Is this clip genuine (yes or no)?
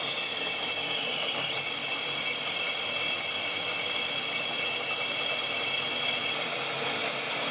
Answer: yes